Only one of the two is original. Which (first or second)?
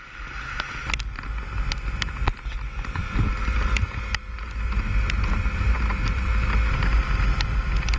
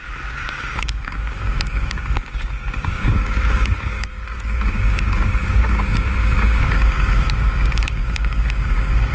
first